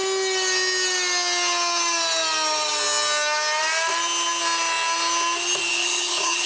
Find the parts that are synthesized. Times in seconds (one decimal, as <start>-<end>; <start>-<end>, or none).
5.7-6.5